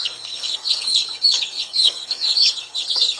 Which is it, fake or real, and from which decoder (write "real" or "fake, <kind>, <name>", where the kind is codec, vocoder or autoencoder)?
fake, codec, SNAC